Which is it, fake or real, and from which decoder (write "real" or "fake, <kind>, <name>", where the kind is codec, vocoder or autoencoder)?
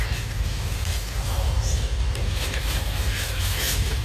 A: fake, codec, DAC